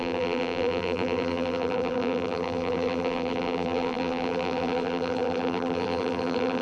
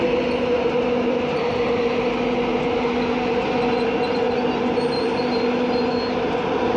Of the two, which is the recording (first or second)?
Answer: second